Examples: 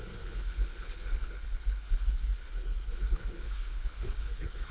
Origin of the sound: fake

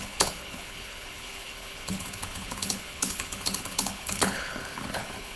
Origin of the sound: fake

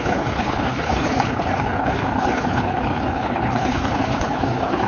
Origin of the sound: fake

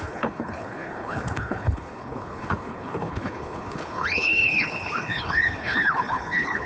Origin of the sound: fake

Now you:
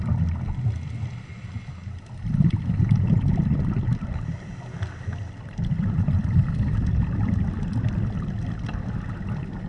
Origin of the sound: real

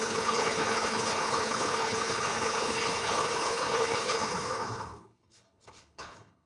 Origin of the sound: fake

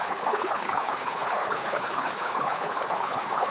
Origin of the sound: fake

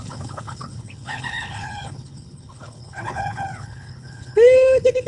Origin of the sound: fake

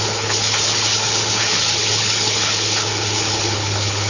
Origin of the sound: fake